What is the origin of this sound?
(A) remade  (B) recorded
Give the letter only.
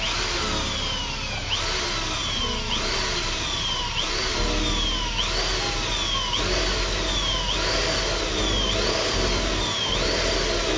B